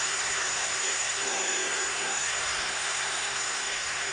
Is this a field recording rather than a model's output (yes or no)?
no